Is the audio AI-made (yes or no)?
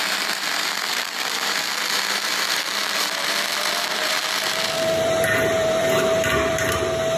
yes